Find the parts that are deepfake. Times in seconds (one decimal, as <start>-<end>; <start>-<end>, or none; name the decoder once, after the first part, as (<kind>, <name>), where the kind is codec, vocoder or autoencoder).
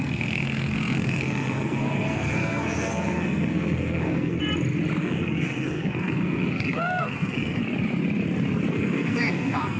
0.0-4.4 (codec, SNAC); 5.0-7.6; 8.7-9.8